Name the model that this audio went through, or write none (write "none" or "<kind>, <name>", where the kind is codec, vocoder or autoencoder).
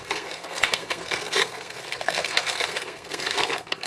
codec, SNAC